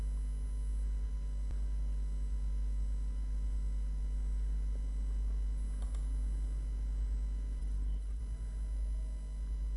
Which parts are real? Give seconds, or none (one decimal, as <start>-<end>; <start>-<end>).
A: 0.0-7.6; 8.2-9.8